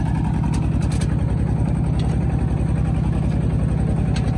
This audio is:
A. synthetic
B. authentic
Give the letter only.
B